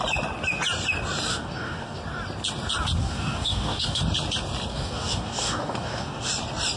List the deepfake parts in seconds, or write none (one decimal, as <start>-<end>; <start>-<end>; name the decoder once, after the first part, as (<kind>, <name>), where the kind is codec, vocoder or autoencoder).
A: 1.3-2.0 (codec, DAC); 3.0-4.0; 4.7-6.3